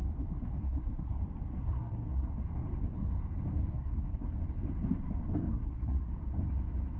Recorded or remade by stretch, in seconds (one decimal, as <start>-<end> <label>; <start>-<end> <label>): 0.0-0.6 recorded; 0.6-1.2 remade; 1.2-1.6 recorded; 1.6-2.3 remade; 2.3-3.7 recorded; 3.7-4.4 remade; 4.4-5.5 recorded; 5.5-6.1 remade; 6.1-7.0 recorded